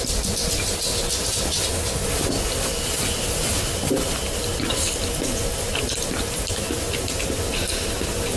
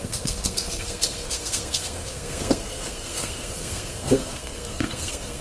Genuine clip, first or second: first